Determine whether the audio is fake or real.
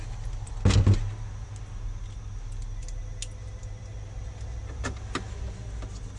real